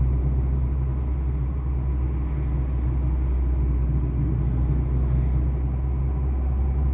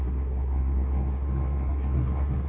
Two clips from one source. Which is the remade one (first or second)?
second